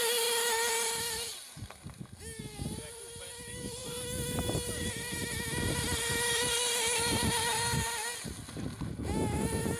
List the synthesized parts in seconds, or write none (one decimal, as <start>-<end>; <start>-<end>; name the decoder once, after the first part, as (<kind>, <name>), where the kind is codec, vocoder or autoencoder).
none